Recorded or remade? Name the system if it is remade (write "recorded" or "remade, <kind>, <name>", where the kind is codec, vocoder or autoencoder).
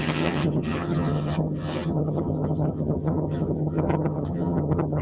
remade, vocoder, HiFi-GAN